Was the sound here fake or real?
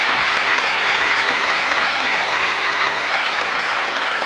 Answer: fake